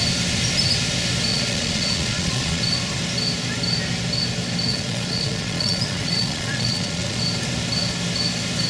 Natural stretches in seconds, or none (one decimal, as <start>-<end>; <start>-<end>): 0.0-1.3; 2.6-4.7; 7.2-8.7